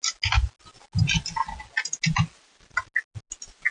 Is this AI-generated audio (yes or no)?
no